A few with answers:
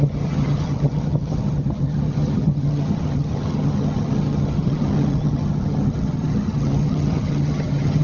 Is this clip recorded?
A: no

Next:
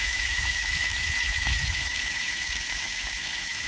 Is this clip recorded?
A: no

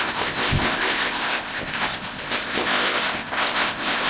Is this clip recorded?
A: no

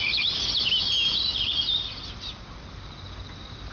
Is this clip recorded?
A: yes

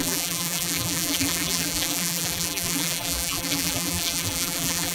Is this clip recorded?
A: no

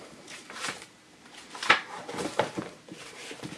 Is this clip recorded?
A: no